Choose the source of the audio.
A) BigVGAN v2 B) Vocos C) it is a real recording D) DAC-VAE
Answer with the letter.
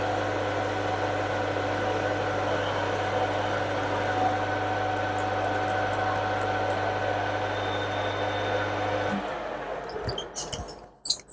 C